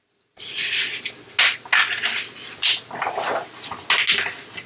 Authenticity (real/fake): real